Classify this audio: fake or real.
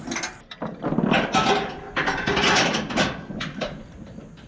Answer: real